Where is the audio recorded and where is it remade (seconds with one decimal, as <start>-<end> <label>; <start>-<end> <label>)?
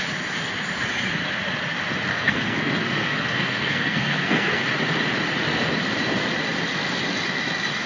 0.0-2.1 recorded; 2.1-4.7 remade; 4.7-7.9 recorded